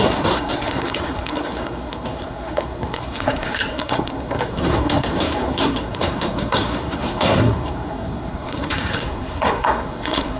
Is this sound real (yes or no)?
no